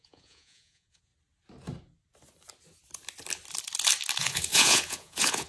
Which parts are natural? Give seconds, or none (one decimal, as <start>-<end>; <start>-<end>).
1.1-4.2